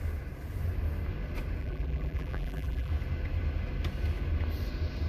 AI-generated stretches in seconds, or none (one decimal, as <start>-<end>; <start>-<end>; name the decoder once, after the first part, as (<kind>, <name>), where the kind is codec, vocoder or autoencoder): 1.6-2.9 (vocoder, BigVGAN v2)

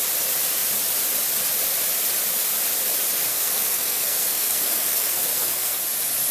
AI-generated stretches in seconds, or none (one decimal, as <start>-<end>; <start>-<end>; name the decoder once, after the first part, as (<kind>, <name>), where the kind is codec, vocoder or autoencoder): 3.3-5.8 (codec, SNAC)